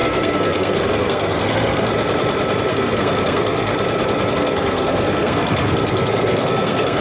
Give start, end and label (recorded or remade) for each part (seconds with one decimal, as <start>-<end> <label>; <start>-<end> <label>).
0.0-1.9 remade; 1.9-2.7 recorded; 2.7-3.7 remade; 3.7-4.3 recorded; 4.3-7.0 remade